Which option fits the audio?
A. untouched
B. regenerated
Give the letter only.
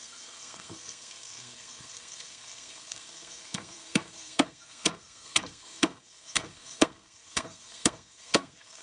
B